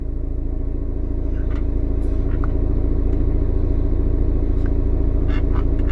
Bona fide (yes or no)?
yes